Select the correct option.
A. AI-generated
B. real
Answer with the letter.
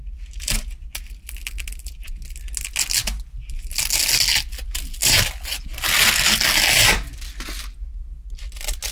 B